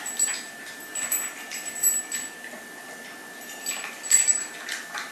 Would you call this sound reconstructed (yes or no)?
no